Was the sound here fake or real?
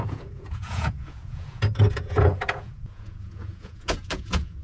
fake